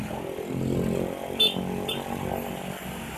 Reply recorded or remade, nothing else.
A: recorded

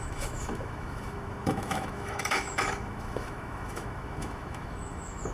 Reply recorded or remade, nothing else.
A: remade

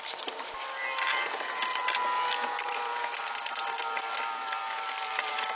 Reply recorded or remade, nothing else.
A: remade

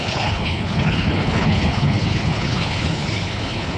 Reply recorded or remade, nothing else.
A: remade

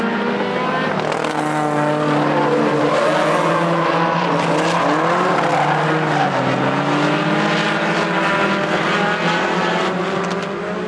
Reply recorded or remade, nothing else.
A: recorded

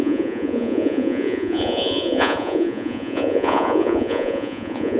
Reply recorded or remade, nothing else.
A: remade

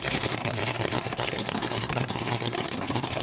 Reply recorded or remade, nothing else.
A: remade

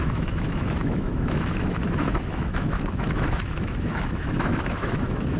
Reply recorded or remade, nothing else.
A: remade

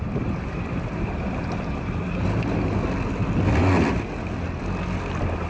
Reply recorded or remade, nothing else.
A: recorded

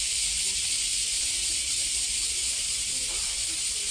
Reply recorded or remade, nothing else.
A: remade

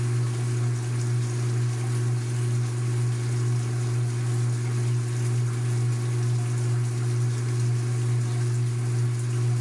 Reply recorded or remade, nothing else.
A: recorded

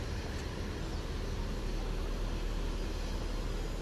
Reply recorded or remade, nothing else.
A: recorded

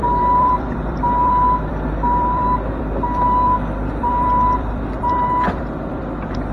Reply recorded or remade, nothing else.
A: remade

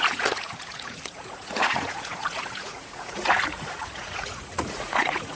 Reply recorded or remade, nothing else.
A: remade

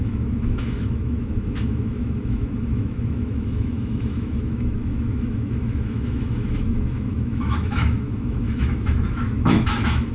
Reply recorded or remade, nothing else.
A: remade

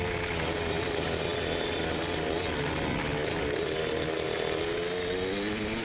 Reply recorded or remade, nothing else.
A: recorded